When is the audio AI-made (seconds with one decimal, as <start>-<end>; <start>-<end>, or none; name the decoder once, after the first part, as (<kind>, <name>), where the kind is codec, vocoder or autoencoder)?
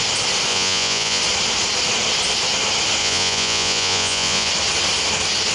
0.5-1.2 (vocoder, Vocos); 3.0-4.5